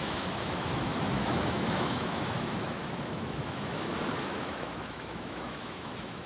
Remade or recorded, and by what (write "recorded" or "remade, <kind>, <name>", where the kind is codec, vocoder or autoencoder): remade, autoencoder, DAC-VAE